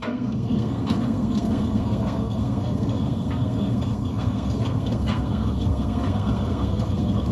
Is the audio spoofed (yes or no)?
yes